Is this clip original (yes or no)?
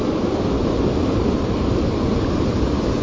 yes